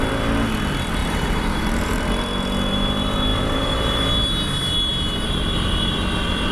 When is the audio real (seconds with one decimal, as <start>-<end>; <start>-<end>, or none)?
0.0-1.0; 2.1-3.3; 4.1-4.9